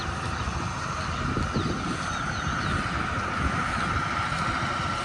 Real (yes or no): yes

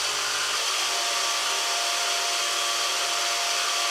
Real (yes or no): yes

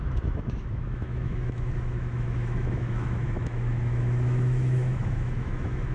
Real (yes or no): no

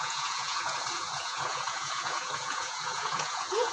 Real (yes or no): no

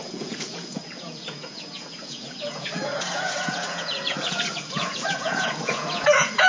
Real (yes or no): no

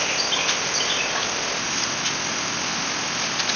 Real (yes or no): yes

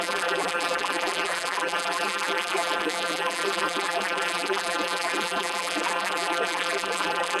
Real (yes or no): no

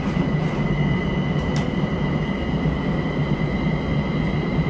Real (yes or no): no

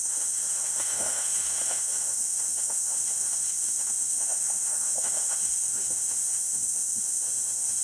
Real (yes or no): no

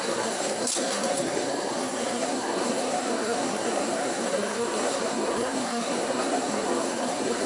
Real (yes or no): no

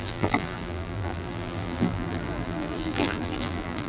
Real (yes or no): no